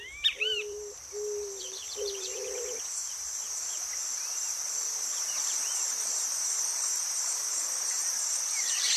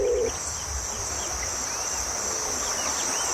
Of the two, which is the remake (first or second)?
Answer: first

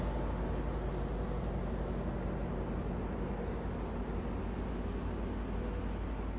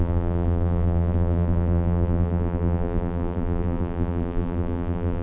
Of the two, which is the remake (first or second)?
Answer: second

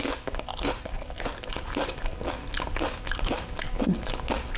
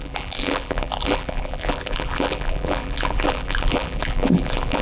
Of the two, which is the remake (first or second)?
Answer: second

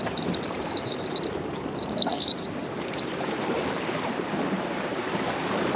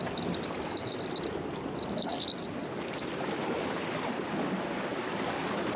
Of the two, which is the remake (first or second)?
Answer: first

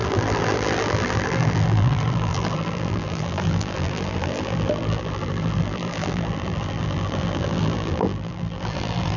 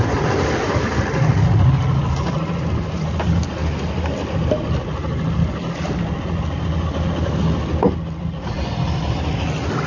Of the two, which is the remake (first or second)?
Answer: first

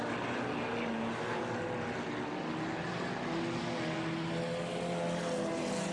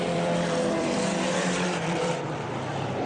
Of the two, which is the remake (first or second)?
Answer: second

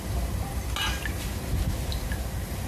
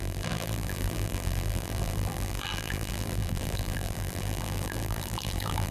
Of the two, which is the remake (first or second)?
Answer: second